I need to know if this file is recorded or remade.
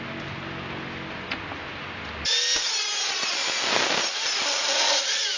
recorded